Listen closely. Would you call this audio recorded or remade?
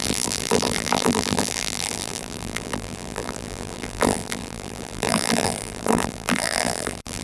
remade